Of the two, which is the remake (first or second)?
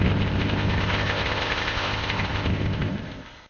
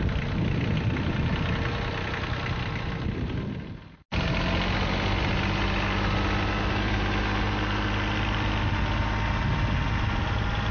first